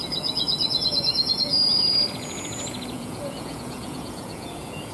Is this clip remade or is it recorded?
remade